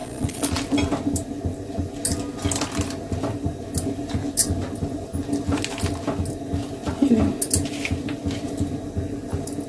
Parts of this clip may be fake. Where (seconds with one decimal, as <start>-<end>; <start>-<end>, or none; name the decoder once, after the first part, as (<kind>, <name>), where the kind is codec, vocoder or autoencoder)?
0.0-0.5 (vocoder, Vocos)